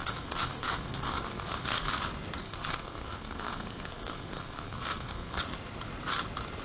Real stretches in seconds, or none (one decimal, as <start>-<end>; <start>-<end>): 1.9-2.4; 5.4-6.6